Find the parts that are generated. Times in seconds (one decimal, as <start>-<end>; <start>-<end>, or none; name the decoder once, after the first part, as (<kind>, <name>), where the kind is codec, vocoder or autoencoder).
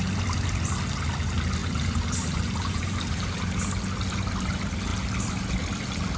1.6-3.7 (vocoder, BigVGAN v2)